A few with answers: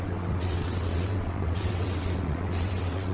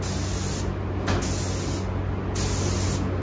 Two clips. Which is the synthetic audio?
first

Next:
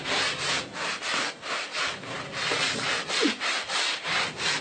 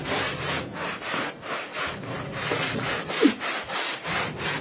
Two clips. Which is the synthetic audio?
first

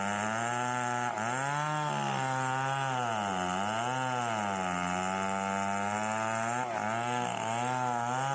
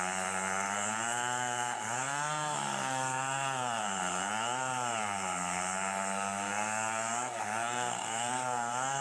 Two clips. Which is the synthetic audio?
second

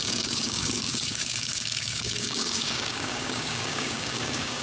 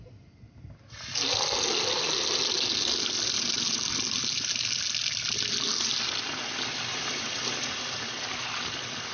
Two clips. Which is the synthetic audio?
first